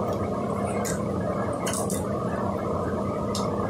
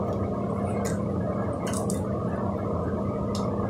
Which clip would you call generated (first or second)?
first